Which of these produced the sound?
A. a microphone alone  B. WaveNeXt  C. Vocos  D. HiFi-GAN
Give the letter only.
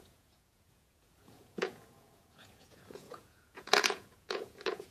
C